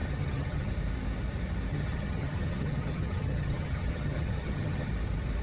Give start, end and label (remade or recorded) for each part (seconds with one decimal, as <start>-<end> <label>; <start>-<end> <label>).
0.0-0.7 remade; 0.7-1.7 recorded; 1.7-4.9 remade; 4.9-5.4 recorded